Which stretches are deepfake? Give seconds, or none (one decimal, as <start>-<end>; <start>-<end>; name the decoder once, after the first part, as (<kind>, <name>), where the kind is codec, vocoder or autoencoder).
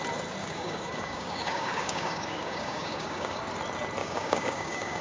0.4-3.4 (codec, DAC); 4.0-5.0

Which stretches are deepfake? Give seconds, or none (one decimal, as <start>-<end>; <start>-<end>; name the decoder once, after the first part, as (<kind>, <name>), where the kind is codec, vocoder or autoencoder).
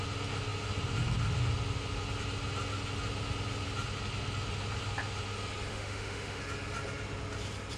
5.7-6.4 (autoencoder, DAC-VAE)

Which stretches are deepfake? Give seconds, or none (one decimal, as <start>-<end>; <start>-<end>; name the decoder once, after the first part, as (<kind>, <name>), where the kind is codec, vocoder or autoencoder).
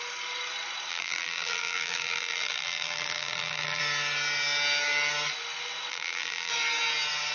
0.9-3.8 (vocoder, BigVGAN v2); 5.9-6.5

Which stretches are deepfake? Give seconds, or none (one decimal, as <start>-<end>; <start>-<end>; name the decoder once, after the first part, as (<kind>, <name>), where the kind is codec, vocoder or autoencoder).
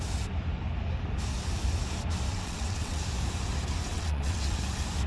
2.3-3.0 (vocoder, WaveNeXt); 3.9-4.6